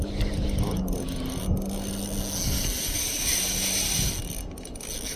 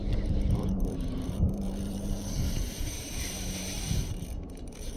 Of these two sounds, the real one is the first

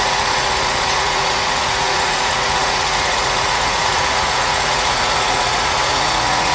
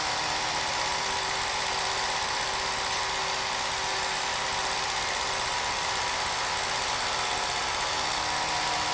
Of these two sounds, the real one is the second